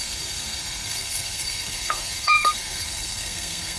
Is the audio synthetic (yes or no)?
yes